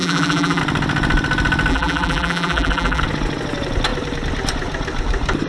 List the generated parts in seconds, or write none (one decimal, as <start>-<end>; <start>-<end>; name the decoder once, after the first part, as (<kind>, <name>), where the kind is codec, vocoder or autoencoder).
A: 0.0-0.6 (vocoder, BigVGAN v2); 1.7-3.0